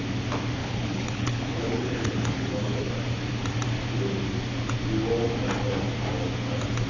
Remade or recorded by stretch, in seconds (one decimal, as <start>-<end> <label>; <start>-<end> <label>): 0.0-0.6 recorded; 0.6-2.9 remade; 2.9-6.9 recorded